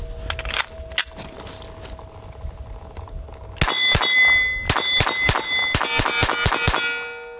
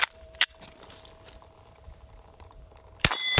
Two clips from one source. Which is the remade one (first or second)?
second